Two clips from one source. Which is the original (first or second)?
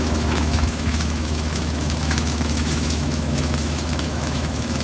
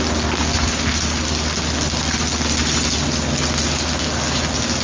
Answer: second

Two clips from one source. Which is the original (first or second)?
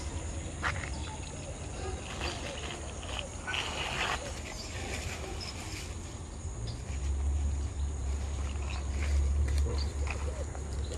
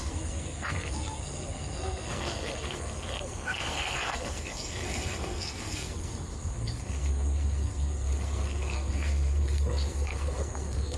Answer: first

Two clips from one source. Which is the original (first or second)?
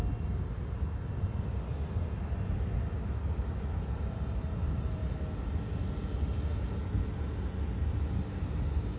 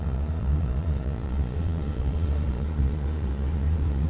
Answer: first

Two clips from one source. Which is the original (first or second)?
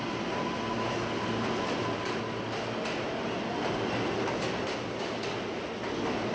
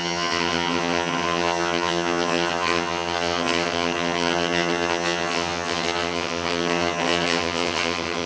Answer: first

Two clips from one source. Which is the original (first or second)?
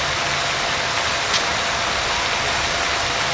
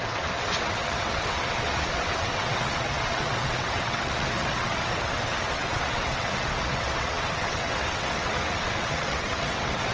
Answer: first